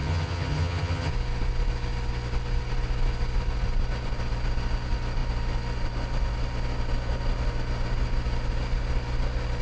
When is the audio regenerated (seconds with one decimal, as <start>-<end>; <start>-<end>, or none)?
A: 0.0-1.1